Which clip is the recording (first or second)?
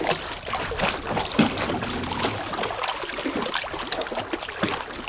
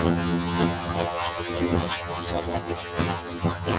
first